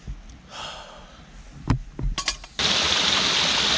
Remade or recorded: recorded